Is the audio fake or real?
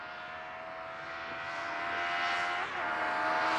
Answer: real